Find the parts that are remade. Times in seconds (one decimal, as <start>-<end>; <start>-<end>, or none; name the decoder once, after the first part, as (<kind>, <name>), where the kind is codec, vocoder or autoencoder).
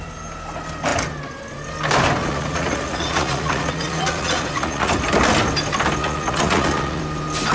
2.2-4.9 (vocoder, Vocos); 6.0-7.0